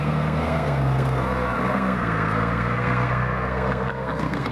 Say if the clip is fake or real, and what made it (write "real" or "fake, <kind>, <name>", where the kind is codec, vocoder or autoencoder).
fake, codec, SNAC